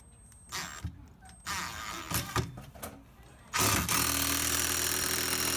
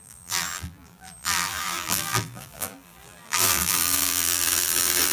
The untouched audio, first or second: first